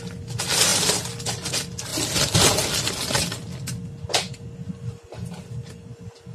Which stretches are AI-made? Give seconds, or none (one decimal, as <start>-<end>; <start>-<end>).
none